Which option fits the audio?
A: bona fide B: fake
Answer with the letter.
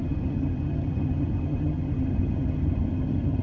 B